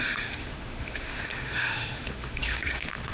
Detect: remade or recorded remade